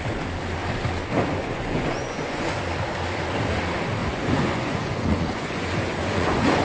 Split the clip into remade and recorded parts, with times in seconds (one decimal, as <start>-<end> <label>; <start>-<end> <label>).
0.0-1.3 recorded; 1.3-2.5 remade; 2.5-4.0 recorded; 4.0-6.6 remade